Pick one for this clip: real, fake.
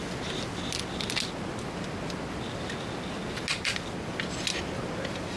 real